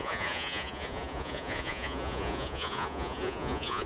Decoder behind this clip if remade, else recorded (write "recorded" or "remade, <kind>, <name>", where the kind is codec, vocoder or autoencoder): remade, vocoder, Vocos